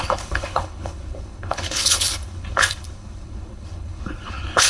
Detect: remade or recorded remade